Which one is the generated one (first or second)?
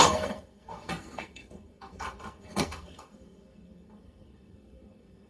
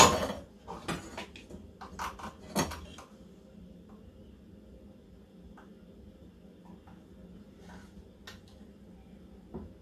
first